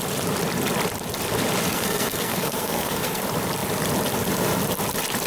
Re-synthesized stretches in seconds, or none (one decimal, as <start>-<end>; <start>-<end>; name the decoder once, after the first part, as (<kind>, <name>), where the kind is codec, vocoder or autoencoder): 1.7-3.2 (codec, SNAC)